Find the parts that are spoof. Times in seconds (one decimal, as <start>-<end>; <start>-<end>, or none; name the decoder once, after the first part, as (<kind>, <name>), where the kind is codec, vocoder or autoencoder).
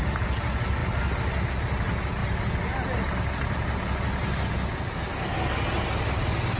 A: none